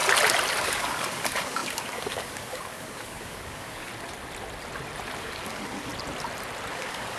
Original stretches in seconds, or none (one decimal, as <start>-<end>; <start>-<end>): 0.0-0.6; 3.9-5.2; 5.9-6.7